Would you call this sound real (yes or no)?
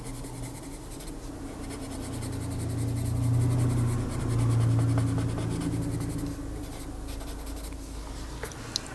yes